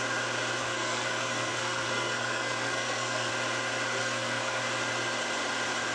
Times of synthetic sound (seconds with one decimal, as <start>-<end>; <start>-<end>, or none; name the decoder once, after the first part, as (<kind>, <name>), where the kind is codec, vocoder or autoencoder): 0.6-3.3 (codec, SNAC); 4.0-4.6